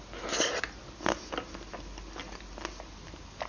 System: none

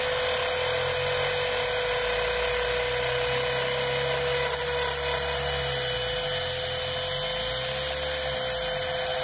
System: none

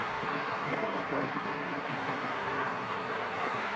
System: codec, SNAC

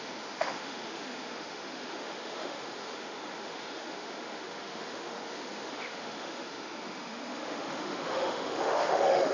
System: autoencoder, DAC-VAE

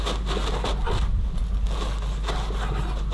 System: none